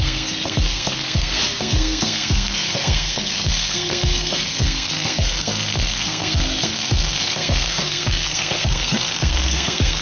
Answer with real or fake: fake